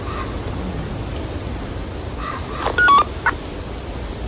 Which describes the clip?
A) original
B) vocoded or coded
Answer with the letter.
A